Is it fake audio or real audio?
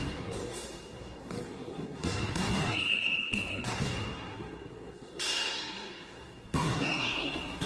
fake